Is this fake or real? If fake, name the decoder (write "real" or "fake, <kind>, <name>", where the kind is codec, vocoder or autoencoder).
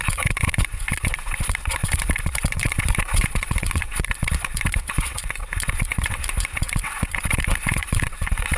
fake, vocoder, WaveNeXt